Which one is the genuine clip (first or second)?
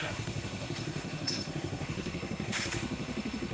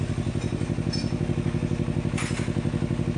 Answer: second